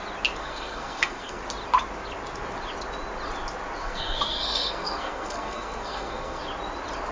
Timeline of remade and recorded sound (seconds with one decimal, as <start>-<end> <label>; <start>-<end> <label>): 0.0-0.4 recorded; 0.4-1.4 remade; 1.4-3.8 recorded; 3.8-6.4 remade; 6.4-7.1 recorded